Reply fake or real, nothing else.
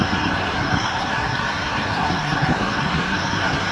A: fake